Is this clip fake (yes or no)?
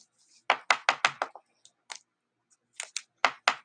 no